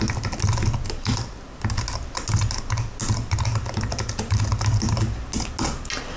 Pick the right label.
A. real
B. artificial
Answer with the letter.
A